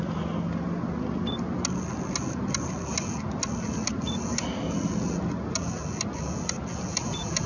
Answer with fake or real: real